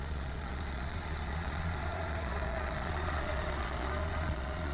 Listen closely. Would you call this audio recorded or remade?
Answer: remade